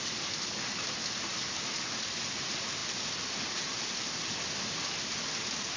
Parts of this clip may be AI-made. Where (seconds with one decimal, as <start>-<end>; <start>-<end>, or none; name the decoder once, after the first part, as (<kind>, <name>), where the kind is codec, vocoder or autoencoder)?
none